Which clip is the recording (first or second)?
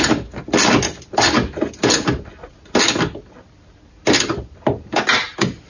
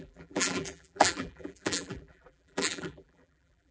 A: first